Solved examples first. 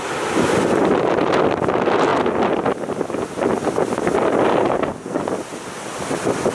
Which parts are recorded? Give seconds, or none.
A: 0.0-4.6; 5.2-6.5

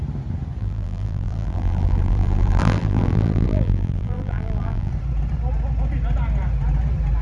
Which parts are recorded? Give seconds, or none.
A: 0.0-0.6; 4.9-7.2

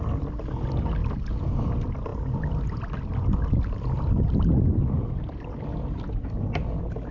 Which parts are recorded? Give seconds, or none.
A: 0.0-7.1

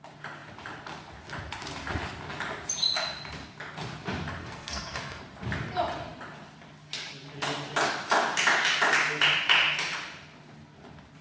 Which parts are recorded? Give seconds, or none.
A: 0.0-4.4; 5.2-11.2

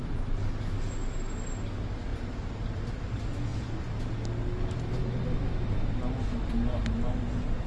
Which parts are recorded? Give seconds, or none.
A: 0.0-2.1; 3.1-7.7

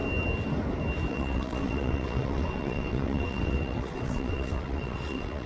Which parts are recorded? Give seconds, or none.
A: 0.0-1.1

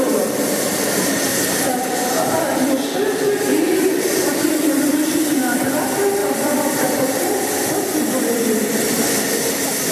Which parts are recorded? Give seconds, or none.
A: 1.3-2.4; 2.9-4.0

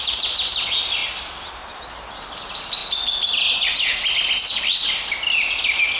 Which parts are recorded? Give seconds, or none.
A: 0.0-6.0